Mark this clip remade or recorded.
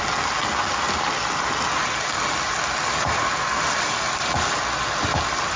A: recorded